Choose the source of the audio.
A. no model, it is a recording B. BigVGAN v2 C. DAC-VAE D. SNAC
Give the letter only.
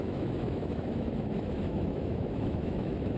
C